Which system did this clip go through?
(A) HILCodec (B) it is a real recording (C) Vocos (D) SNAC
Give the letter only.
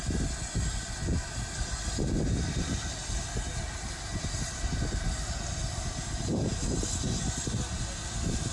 B